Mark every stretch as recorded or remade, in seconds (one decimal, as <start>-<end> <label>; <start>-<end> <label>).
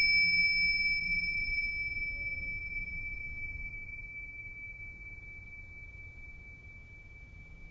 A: 0.0-1.0 recorded; 1.0-1.7 remade; 1.7-2.6 recorded; 2.6-3.2 remade; 3.2-3.7 recorded; 3.7-4.8 remade; 4.8-7.7 recorded